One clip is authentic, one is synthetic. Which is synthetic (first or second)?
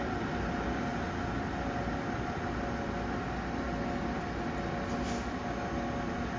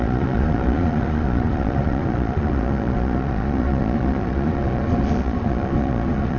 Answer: second